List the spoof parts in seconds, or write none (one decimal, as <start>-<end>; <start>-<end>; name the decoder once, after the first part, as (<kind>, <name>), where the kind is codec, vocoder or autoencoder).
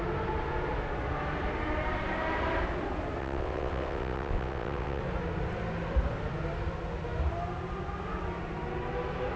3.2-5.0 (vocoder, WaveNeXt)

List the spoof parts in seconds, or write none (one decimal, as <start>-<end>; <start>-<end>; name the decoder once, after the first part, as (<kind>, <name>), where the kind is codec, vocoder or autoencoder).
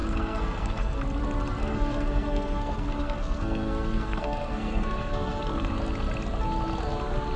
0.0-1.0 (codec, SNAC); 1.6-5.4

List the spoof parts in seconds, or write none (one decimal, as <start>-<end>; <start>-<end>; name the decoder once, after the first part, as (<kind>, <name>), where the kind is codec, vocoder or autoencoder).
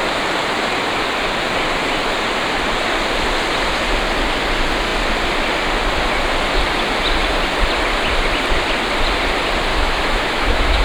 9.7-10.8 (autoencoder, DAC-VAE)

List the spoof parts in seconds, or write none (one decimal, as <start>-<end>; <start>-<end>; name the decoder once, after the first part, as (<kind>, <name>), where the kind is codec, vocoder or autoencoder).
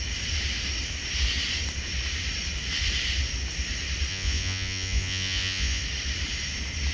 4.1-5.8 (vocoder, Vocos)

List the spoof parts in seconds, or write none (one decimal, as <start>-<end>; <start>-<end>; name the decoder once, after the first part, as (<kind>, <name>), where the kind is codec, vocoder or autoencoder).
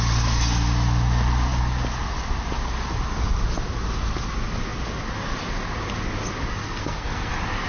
6.6-7.3 (codec, SNAC)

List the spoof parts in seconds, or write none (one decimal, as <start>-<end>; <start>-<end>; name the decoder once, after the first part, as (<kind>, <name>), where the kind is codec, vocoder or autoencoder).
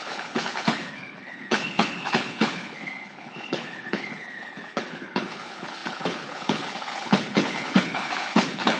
0.0-8.8 (codec, HILCodec)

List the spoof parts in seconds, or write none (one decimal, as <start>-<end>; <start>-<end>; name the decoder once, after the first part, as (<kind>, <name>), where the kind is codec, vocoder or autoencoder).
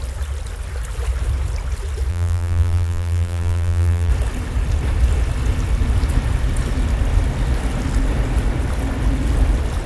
2.1-4.1 (vocoder, BigVGAN v2)